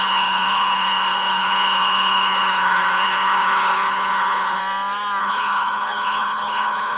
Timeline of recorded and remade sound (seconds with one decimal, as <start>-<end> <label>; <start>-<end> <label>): 0.0-4.6 remade; 4.6-5.2 recorded; 5.2-7.0 remade